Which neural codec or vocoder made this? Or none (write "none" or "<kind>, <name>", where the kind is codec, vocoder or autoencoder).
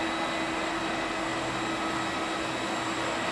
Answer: none